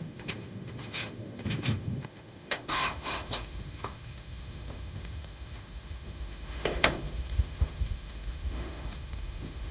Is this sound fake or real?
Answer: fake